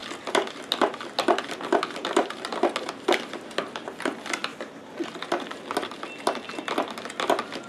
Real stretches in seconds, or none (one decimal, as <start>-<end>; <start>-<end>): 0.0-7.7